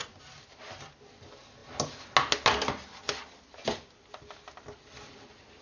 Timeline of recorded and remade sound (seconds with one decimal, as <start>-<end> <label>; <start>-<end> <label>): 0.0-5.6 recorded